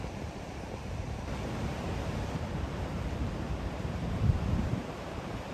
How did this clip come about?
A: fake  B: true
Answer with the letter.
A